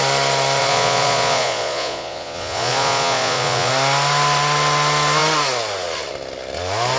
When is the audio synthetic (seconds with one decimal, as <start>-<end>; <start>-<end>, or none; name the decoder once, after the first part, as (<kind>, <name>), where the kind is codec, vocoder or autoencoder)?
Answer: 0.6-3.7 (vocoder, Vocos)